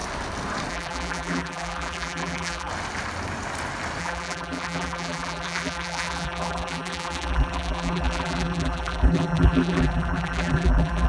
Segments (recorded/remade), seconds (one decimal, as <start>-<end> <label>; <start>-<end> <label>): 0.0-0.7 recorded; 0.7-2.7 remade; 2.7-4.0 recorded; 4.0-11.1 remade